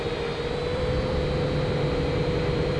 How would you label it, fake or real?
fake